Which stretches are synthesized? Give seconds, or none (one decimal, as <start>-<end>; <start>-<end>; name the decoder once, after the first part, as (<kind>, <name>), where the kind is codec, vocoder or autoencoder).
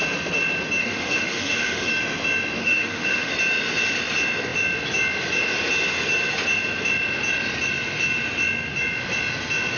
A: 0.8-1.9 (autoencoder, DAC-VAE); 2.6-3.3